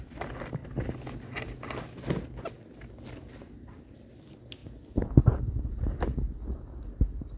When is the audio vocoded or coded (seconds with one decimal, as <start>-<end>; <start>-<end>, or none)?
none